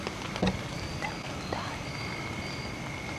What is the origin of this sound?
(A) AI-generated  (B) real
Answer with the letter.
B